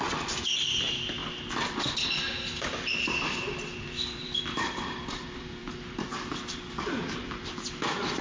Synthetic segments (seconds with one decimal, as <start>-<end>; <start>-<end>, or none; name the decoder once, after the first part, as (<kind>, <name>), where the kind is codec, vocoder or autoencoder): 3.7-6.1 (vocoder, BigVGAN v2)